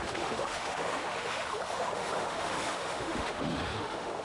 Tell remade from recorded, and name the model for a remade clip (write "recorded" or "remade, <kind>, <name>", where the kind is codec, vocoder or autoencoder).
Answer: remade, autoencoder, DAC-VAE